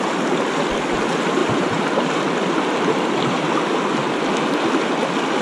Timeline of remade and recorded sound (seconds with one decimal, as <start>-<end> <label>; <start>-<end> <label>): 0.0-1.4 recorded; 1.4-3.5 remade; 3.5-5.4 recorded